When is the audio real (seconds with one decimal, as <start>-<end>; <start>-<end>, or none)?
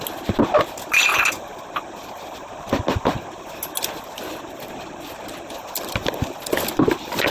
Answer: 0.0-7.3